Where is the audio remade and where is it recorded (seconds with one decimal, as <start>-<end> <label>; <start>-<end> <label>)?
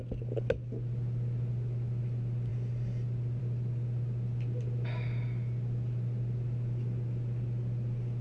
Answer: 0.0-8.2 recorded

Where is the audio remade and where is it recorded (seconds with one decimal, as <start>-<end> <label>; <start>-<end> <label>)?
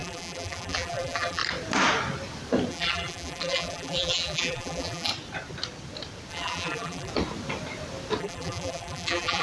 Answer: 0.0-1.4 remade; 1.4-2.7 recorded; 2.7-5.1 remade; 5.1-6.3 recorded; 6.3-7.1 remade; 7.1-8.2 recorded; 8.2-9.4 remade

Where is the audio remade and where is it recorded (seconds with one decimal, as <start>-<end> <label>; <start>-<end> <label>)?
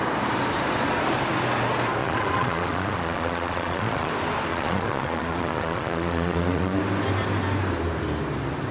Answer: 0.0-2.0 recorded; 2.0-4.1 remade; 4.1-4.5 recorded; 4.5-6.8 remade; 6.8-8.7 recorded